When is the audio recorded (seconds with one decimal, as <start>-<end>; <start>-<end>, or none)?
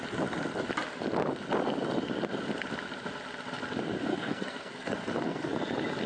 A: 0.0-4.1; 5.5-6.1